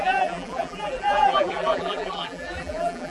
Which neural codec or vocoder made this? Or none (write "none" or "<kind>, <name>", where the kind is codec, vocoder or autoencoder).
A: vocoder, BigVGAN v2